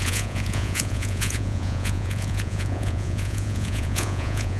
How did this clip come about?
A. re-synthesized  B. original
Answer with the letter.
A